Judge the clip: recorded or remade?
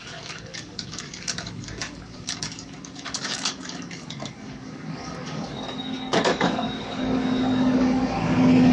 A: remade